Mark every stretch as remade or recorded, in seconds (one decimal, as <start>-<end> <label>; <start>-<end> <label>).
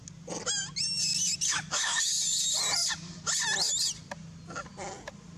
0.0-1.5 recorded; 1.5-2.1 remade; 2.1-5.4 recorded